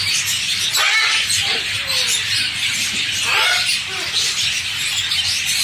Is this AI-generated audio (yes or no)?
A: no